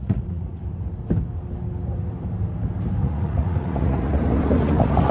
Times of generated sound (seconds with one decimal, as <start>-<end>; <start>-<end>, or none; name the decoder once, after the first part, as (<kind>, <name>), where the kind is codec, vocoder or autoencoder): 0.0-0.6 (vocoder, Vocos); 3.0-5.1